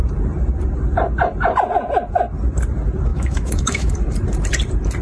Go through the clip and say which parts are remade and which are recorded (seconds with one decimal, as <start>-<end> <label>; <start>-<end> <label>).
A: 0.0-3.1 recorded; 3.1-3.9 remade; 3.9-5.0 recorded